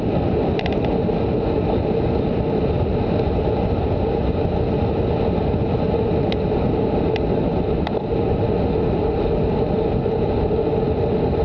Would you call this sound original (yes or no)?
yes